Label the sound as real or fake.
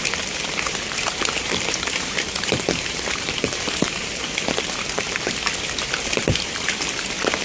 real